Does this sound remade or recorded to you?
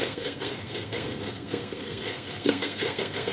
remade